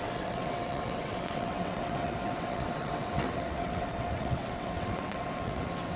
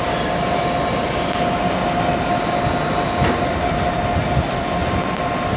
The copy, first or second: first